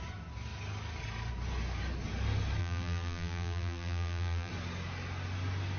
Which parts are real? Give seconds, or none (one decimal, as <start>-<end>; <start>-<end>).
0.0-2.6; 4.5-5.8